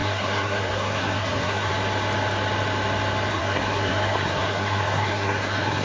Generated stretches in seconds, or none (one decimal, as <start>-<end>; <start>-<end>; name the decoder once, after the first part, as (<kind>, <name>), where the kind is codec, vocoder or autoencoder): 0.0-1.7 (codec, SNAC); 3.3-5.8